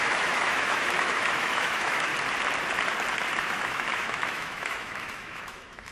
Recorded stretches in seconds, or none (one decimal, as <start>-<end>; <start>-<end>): 2.1-3.4